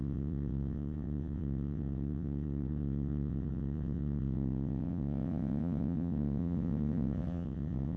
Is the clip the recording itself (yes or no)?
no